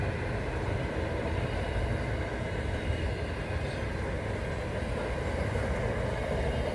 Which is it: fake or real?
real